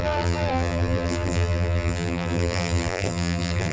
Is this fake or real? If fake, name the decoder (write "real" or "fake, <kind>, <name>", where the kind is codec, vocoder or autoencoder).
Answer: fake, vocoder, BigVGAN v2